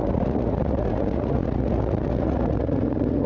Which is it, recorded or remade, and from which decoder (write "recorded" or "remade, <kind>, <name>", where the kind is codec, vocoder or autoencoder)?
remade, vocoder, Vocos